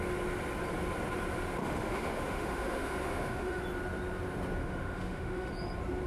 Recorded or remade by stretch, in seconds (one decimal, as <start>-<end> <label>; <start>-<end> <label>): 0.0-1.6 recorded; 1.6-3.6 remade; 3.6-4.6 recorded; 4.6-5.5 remade; 5.5-6.1 recorded